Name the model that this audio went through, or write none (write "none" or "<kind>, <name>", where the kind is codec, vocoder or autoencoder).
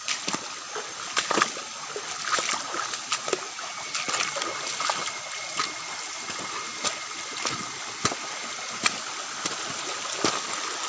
none